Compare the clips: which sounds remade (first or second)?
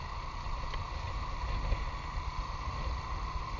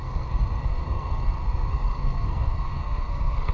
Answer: second